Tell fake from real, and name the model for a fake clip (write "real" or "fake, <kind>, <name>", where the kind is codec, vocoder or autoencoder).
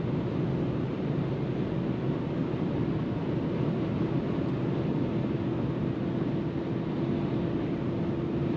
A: real